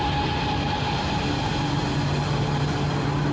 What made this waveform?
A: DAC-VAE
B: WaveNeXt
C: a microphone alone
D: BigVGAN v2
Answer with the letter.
C